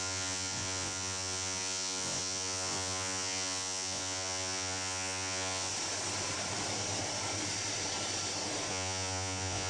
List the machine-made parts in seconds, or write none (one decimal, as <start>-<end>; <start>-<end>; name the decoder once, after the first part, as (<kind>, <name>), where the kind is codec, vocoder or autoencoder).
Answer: 0.0-5.7 (vocoder, Vocos); 8.7-9.7